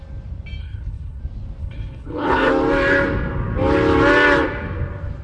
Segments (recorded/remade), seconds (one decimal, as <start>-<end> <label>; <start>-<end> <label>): 0.0-0.6 recorded; 0.6-1.2 remade; 1.2-1.6 recorded; 1.6-2.5 remade; 2.5-5.2 recorded